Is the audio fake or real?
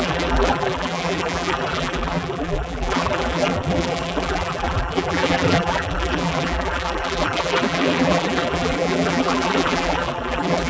fake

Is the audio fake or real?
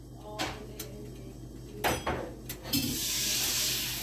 real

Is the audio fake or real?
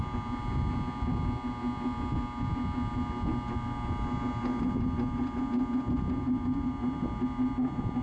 real